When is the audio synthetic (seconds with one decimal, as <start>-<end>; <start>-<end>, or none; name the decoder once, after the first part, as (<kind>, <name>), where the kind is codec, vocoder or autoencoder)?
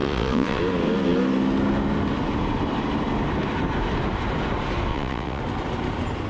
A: 0.0-0.6 (vocoder, WaveNeXt); 4.9-5.4